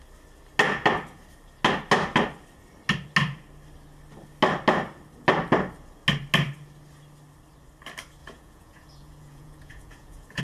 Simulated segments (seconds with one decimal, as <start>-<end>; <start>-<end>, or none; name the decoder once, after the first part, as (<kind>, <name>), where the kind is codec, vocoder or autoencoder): 8.2-10.4 (vocoder, Vocos)